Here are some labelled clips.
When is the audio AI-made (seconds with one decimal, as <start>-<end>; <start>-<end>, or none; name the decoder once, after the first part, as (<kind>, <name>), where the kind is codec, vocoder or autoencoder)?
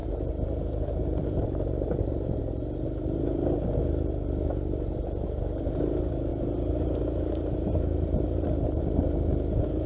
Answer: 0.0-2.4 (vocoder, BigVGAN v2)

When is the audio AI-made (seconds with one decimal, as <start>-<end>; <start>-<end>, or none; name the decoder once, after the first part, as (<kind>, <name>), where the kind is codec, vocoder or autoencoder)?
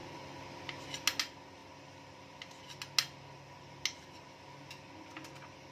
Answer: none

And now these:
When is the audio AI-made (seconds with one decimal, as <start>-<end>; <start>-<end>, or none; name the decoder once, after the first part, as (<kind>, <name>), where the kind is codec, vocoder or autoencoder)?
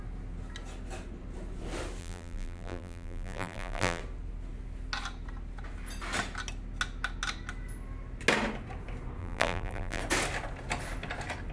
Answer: 2.0-4.0 (vocoder, BigVGAN v2); 9.2-10.0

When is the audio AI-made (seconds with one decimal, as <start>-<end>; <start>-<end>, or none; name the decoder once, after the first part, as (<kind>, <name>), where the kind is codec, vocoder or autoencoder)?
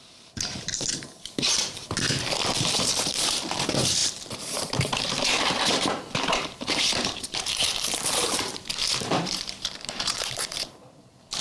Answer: 0.0-11.4 (vocoder, BigVGAN v2)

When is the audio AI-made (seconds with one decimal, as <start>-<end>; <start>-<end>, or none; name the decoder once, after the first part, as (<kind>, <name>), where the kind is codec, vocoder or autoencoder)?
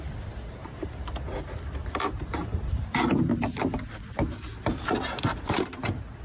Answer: 0.6-3.2 (vocoder, BigVGAN v2)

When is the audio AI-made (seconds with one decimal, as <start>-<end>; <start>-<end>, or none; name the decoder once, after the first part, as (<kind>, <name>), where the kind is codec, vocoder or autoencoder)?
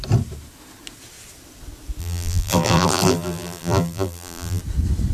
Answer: 2.0-4.6 (vocoder, BigVGAN v2)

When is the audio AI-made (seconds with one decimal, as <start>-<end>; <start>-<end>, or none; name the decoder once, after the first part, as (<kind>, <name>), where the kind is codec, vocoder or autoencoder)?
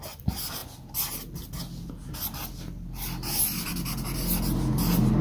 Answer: none